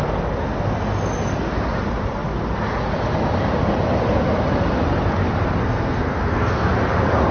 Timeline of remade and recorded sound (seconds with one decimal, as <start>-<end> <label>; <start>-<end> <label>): 0.0-5.6 recorded; 5.6-6.7 remade; 6.7-7.3 recorded